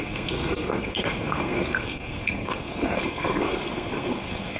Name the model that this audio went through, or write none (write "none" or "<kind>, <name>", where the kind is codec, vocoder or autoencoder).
codec, SNAC